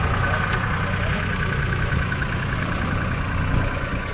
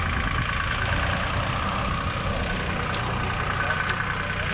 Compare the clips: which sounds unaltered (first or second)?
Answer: second